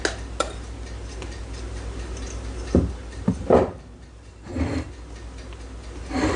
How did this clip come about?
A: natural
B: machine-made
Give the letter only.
A